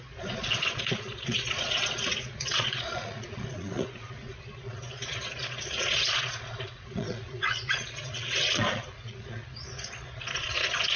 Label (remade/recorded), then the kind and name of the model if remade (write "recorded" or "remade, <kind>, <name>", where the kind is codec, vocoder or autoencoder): remade, vocoder, Vocos